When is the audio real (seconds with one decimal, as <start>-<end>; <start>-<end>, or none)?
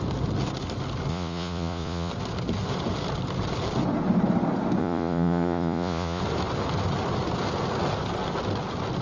0.0-1.1; 2.1-4.8; 6.2-9.0